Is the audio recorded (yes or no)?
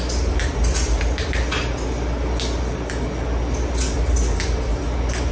yes